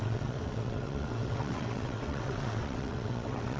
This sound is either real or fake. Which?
fake